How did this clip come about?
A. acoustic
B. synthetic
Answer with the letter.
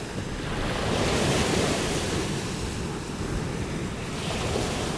A